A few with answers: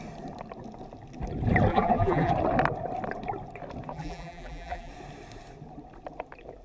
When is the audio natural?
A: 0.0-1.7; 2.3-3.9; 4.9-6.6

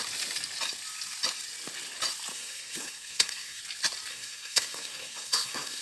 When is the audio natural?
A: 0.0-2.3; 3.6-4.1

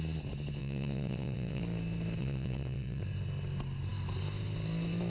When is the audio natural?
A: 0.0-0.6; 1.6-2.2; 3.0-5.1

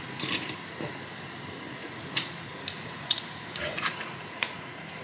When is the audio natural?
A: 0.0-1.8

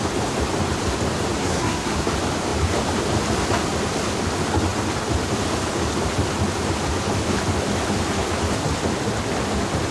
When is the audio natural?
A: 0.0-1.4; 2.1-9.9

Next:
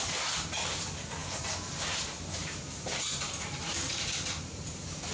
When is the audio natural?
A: 0.0-2.4

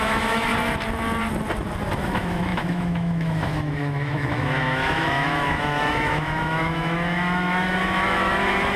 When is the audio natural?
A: 0.5-2.0